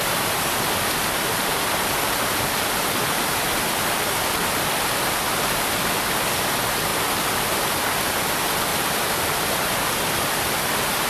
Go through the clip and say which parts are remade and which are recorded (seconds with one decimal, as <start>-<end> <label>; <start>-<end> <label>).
0.0-1.4 recorded; 1.4-5.8 remade; 5.8-8.7 recorded; 8.7-9.8 remade; 9.8-11.1 recorded